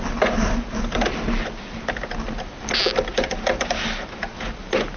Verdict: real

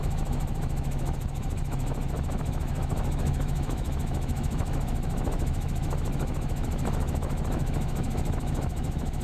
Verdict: fake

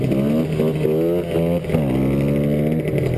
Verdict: real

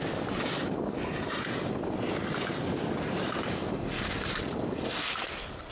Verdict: real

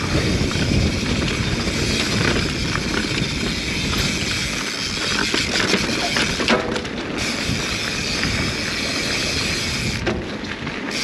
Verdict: real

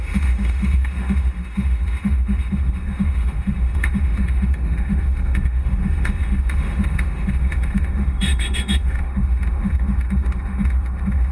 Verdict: fake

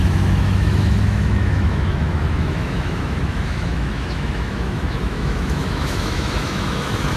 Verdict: fake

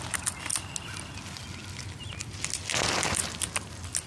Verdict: real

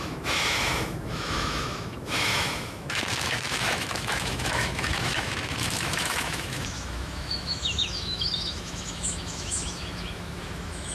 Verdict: fake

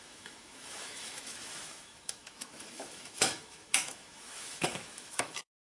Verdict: fake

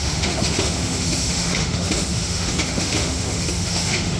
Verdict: fake